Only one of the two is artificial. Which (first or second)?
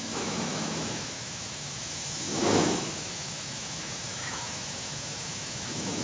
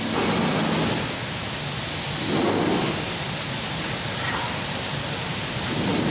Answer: first